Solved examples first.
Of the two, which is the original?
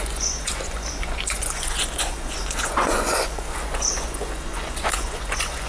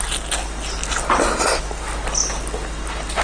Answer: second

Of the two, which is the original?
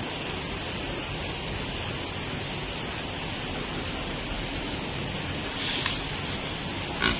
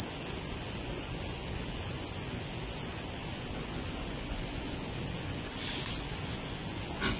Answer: first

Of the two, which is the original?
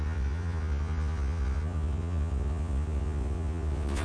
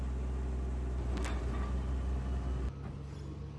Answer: second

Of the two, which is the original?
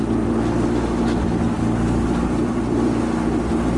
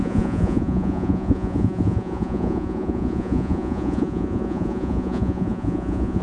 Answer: first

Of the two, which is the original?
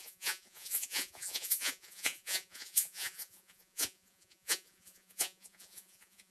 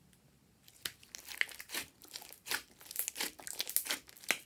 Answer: second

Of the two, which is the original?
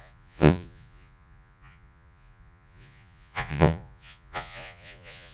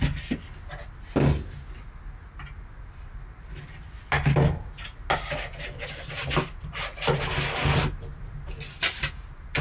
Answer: second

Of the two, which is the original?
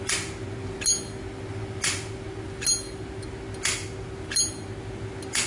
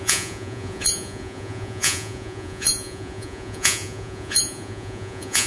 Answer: first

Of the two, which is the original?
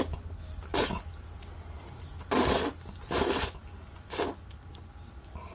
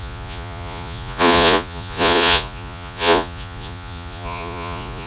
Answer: first